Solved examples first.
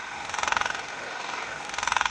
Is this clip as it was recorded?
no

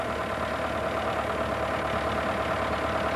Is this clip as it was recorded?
yes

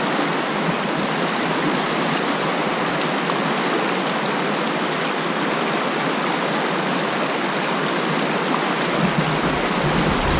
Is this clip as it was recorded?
yes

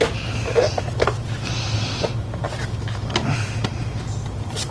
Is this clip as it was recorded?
yes